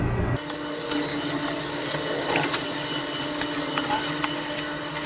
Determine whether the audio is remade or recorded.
recorded